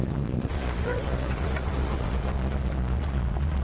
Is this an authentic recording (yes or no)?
no